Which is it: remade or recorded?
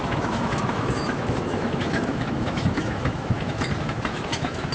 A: remade